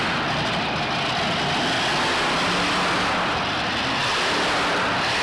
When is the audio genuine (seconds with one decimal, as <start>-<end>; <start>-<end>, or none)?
0.0-5.2